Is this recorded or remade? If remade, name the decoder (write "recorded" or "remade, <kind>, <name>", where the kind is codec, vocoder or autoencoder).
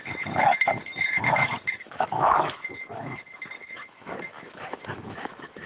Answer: remade, autoencoder, DAC-VAE